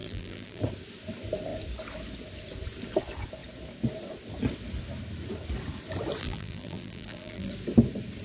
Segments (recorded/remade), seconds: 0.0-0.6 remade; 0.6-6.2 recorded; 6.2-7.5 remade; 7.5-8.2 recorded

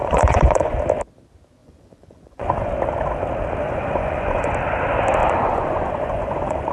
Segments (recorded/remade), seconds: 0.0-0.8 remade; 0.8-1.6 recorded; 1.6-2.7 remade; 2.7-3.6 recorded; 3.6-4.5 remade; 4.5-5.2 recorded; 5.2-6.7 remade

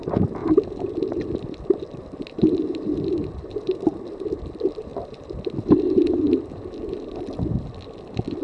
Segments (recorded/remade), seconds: 0.0-0.4 remade; 0.4-1.4 recorded; 1.4-8.4 remade

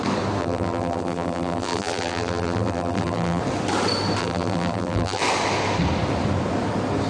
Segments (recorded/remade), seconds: 0.0-0.4 recorded; 0.4-3.4 remade; 3.4-4.2 recorded; 4.2-5.2 remade; 5.2-7.1 recorded